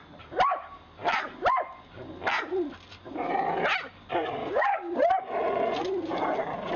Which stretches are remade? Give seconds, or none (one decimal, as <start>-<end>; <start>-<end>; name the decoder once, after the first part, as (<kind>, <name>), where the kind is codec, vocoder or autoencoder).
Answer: 4.4-5.0 (codec, DAC)